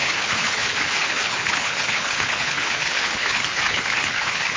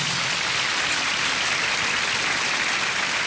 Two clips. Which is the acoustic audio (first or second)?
second